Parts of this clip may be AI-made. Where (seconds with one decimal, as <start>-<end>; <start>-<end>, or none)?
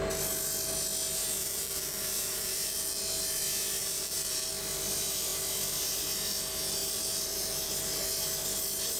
1.4-3.0; 3.8-4.5; 6.8-7.7